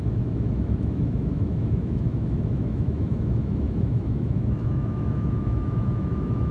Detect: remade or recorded remade